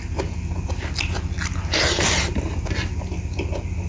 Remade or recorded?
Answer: recorded